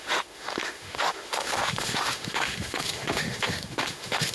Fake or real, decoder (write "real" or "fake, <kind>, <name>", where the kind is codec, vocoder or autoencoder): fake, autoencoder, DAC-VAE